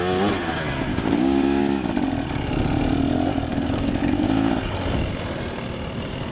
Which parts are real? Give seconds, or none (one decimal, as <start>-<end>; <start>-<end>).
0.0-0.9; 1.6-3.5; 4.5-6.3